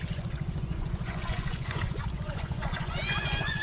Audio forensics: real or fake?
fake